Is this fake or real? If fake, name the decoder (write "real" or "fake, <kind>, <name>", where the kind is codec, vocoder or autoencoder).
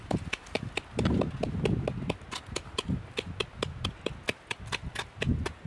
real